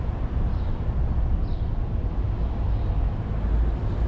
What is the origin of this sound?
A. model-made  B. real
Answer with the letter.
B